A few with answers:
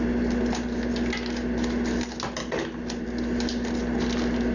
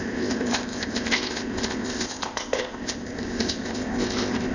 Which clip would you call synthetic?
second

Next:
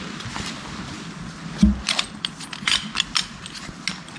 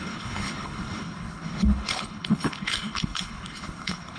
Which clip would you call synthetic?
second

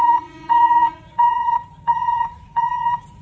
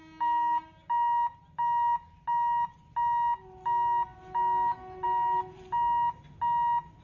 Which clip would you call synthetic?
first